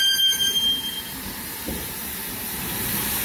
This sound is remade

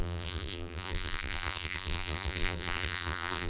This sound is remade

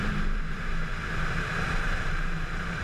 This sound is remade